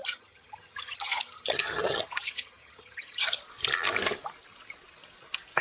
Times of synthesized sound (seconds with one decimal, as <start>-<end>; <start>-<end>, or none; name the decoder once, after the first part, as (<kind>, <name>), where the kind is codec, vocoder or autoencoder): 0.0-3.4 (vocoder, HiFi-GAN)